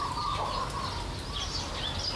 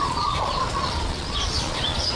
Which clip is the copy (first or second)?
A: second